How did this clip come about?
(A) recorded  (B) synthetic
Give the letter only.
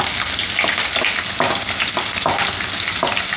A